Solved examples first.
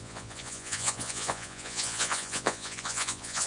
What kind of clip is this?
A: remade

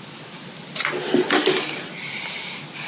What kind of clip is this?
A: recorded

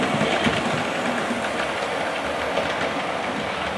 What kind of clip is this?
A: recorded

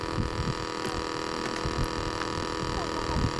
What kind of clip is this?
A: recorded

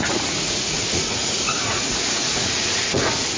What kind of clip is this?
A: remade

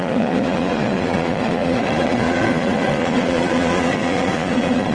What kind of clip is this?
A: remade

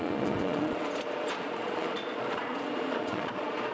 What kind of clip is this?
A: remade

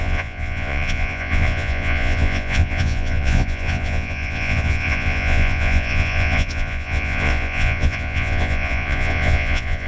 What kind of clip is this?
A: remade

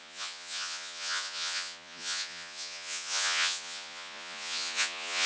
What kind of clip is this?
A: remade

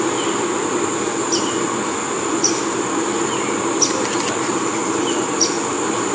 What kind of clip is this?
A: recorded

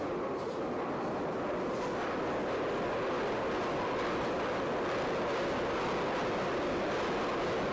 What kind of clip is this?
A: recorded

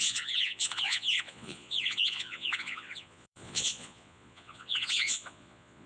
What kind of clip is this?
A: remade